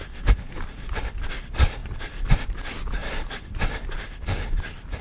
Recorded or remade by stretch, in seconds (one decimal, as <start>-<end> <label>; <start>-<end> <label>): 0.0-1.8 recorded; 1.8-4.5 remade; 4.5-5.0 recorded